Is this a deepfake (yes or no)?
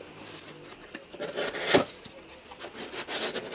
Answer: no